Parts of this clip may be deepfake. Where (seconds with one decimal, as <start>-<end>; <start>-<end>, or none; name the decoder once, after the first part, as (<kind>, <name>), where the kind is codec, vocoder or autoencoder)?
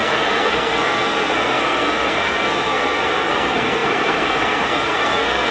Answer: 0.0-5.5 (codec, SNAC)